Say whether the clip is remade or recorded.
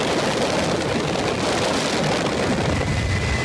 recorded